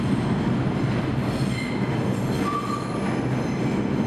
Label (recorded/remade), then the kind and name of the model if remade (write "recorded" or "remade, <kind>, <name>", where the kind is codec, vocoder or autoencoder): recorded